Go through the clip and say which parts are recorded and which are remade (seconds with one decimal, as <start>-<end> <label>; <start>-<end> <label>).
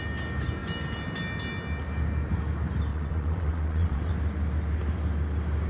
0.0-2.9 recorded; 2.9-4.1 remade; 4.1-5.7 recorded